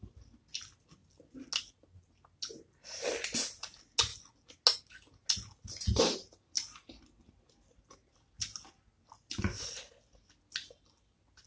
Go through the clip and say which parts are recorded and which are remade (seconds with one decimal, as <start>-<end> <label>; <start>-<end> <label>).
0.0-11.5 recorded